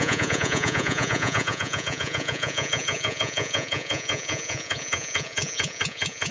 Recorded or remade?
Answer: remade